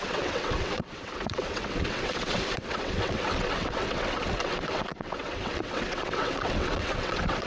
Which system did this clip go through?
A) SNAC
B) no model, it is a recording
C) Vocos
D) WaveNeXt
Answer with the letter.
D